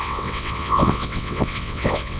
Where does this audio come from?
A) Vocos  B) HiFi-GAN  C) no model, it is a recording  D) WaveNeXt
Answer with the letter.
D